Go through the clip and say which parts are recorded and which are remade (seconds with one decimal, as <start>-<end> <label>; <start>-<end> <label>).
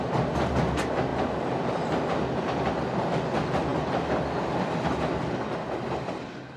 0.0-6.6 recorded